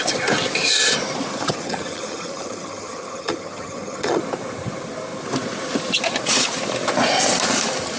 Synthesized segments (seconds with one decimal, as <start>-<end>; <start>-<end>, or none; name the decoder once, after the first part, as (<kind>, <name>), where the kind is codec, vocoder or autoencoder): 1.3-4.2 (vocoder, HiFi-GAN)